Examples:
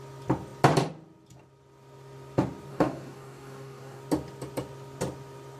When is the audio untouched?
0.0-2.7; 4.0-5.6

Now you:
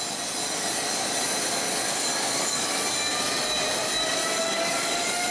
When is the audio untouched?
0.0-1.8; 2.8-4.4

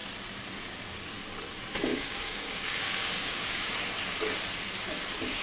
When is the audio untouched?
0.0-1.9; 3.7-5.4